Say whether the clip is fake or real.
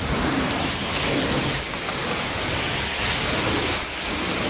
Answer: fake